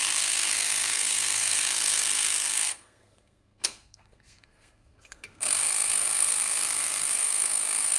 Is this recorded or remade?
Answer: remade